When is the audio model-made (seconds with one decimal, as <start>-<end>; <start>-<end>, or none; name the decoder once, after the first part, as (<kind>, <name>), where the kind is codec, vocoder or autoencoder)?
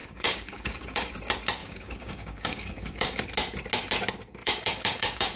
0.0-1.1 (codec, DAC); 1.6-3.2; 4.4-5.4